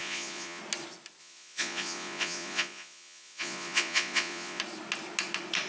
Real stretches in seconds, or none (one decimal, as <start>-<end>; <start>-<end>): 0.6-1.2; 4.6-5.7